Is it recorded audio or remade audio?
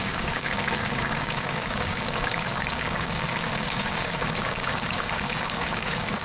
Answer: remade